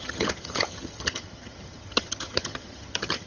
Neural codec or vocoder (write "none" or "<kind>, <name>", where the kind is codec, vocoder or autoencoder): vocoder, HiFi-GAN